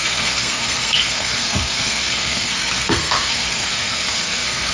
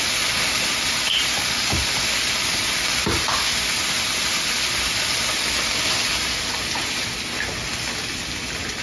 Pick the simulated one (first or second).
first